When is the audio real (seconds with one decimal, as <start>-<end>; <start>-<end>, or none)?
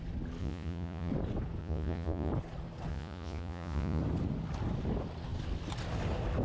0.0-0.4; 1.1-1.6; 2.3-2.9; 4.0-6.4